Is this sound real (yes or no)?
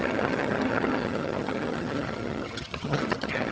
no